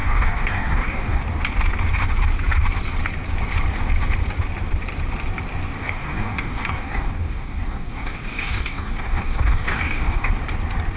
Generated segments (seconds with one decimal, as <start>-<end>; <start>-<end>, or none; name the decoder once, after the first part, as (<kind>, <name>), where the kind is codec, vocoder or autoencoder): 0.0-1.2 (codec, DAC); 5.8-10.3